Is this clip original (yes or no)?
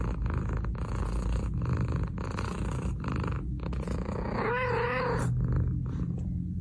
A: yes